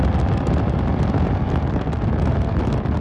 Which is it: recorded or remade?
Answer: recorded